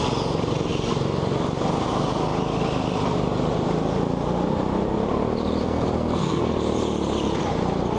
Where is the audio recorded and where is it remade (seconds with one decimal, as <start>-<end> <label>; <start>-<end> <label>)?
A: 0.0-5.6 recorded; 5.6-6.5 remade; 6.5-8.0 recorded